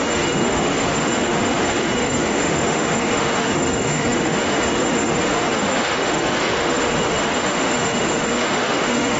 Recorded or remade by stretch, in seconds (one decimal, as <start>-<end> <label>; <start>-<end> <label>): 0.0-9.2 remade